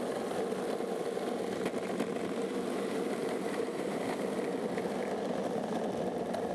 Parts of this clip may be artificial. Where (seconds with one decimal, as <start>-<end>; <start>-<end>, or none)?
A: 3.2-4.6